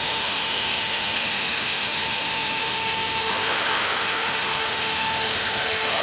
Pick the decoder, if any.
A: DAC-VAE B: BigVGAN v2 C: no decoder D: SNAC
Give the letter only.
A